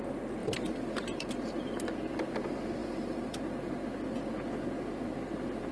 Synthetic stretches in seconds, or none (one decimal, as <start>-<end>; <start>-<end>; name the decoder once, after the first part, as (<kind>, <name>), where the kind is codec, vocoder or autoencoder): 0.4-2.1 (vocoder, BigVGAN v2); 2.8-4.3